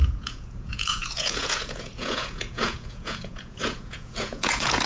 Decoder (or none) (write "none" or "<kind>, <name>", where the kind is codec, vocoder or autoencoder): vocoder, Vocos